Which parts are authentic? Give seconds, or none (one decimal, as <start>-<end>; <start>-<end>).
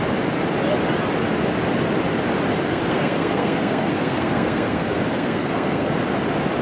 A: 0.0-2.7; 5.9-6.6